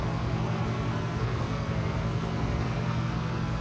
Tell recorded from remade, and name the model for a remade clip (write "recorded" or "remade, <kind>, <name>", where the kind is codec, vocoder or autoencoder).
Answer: remade, codec, SNAC